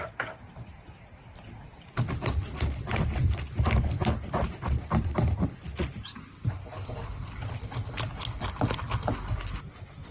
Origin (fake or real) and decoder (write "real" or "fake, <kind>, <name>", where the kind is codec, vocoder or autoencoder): real